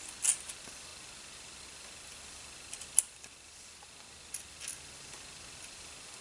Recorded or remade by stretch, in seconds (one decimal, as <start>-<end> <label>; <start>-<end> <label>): 0.0-6.2 recorded

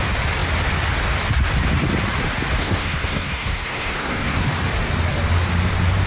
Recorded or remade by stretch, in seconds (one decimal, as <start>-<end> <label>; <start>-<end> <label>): 0.0-2.6 recorded; 2.6-4.5 remade; 4.5-6.1 recorded

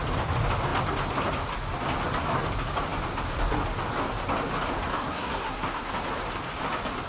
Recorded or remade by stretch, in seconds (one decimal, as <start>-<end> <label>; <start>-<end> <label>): 0.0-4.9 recorded; 4.9-5.9 remade; 5.9-7.1 recorded

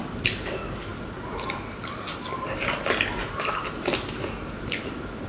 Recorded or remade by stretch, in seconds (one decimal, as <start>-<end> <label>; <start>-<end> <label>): 0.0-5.3 recorded

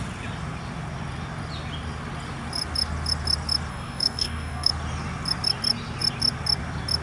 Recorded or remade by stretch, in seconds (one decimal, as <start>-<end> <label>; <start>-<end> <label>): 0.0-3.7 recorded; 3.7-4.7 remade; 4.7-7.0 recorded

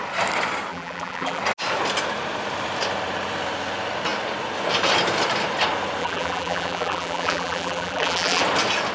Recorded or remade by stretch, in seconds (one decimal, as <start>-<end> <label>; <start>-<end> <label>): 0.0-0.7 recorded; 0.7-1.4 remade; 1.4-6.0 recorded; 6.0-8.4 remade; 8.4-8.9 recorded